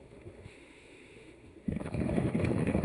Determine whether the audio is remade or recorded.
remade